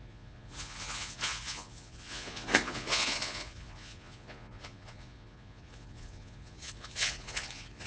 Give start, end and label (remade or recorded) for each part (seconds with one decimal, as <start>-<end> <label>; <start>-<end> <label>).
0.0-7.9 remade